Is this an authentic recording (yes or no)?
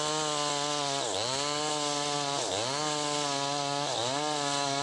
yes